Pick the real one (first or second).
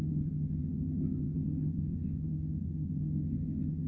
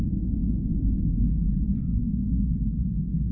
second